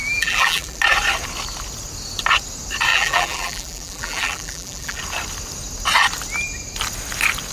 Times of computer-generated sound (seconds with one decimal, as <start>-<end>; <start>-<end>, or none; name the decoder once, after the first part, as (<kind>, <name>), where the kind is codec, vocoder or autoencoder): 0.0-0.8 (vocoder, BigVGAN v2); 2.9-5.0